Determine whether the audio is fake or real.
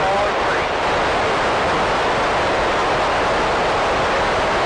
real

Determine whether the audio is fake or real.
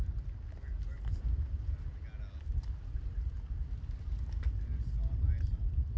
real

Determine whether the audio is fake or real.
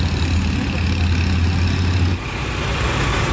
real